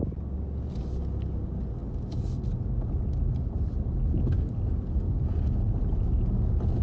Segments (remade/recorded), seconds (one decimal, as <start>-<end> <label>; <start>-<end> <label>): 0.0-6.8 recorded